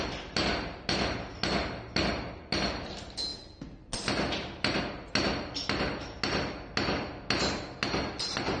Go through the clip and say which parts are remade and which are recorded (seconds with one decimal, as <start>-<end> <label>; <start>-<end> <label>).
0.0-8.6 recorded